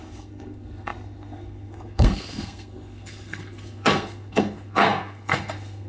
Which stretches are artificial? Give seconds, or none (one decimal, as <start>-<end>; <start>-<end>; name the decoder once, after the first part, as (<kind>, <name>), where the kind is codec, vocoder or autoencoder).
0.0-5.9 (codec, SNAC)